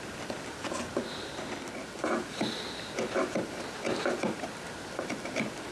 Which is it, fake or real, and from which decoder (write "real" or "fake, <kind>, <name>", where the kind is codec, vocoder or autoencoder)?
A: real